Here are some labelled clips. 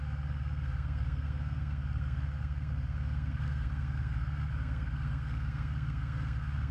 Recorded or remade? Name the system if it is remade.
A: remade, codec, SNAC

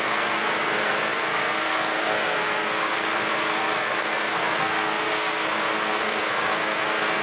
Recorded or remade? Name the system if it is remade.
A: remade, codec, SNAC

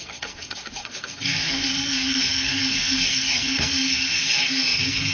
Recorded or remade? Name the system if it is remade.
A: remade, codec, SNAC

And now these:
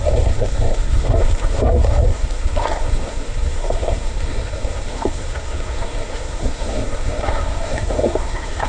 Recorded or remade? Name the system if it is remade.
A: remade, codec, SNAC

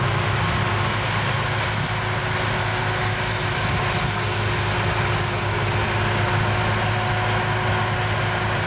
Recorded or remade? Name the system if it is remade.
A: recorded